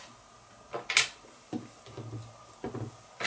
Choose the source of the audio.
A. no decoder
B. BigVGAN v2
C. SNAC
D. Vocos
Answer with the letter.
A